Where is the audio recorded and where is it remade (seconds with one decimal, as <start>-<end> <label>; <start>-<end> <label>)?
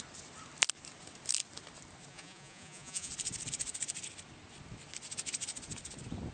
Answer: 0.0-2.1 recorded; 2.1-3.1 remade; 3.1-6.3 recorded